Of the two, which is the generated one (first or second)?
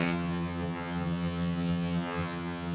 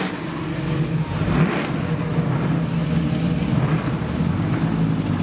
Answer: first